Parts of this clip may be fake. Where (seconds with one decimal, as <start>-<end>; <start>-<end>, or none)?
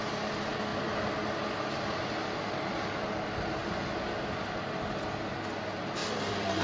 0.7-2.7; 6.0-6.6